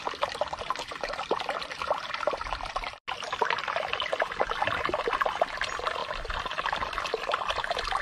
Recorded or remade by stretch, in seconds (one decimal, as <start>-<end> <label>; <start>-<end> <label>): 0.0-8.0 recorded